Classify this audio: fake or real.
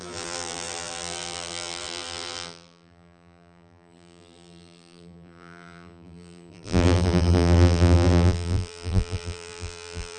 fake